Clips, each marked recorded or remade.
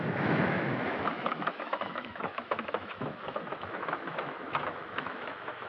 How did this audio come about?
remade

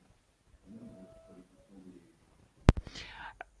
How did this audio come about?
recorded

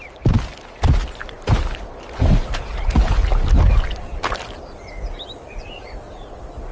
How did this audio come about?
recorded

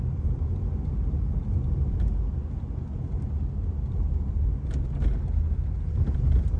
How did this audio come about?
recorded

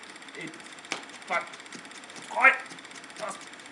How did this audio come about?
recorded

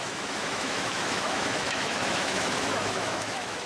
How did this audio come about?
remade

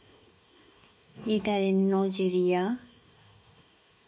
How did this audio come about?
remade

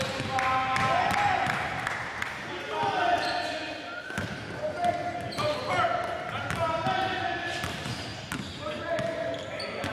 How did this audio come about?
recorded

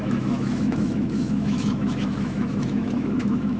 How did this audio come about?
remade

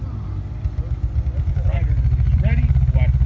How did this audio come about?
recorded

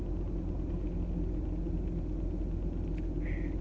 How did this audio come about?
recorded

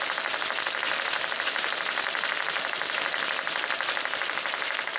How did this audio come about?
recorded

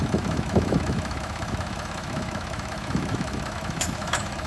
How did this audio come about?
remade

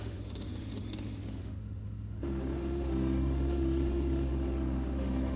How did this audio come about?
remade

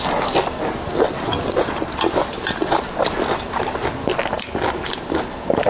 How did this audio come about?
recorded